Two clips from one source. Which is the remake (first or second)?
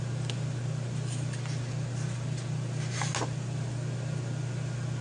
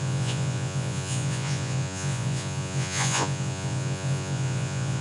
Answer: second